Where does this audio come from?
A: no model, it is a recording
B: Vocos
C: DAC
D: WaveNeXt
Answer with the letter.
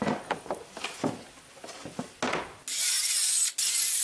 A